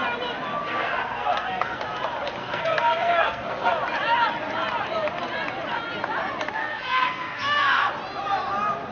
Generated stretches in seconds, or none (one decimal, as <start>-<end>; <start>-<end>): 0.5-1.8; 2.4-3.7; 6.6-7.9